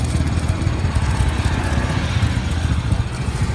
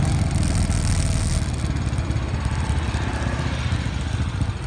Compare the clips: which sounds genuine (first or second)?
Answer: second